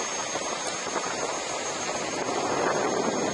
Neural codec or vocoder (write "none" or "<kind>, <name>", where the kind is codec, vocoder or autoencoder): none